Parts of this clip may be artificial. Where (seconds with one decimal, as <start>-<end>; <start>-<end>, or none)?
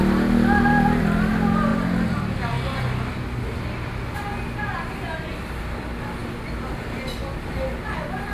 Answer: none